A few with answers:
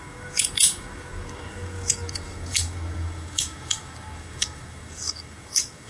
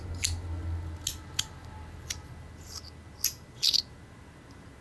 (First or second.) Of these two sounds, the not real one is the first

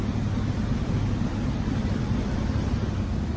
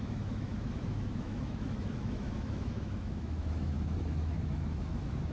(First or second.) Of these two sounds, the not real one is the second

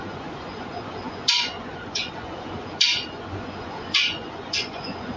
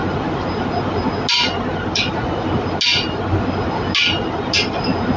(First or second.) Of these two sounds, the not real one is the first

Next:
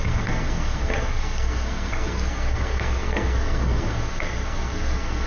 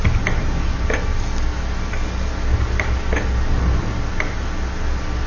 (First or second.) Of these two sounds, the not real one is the first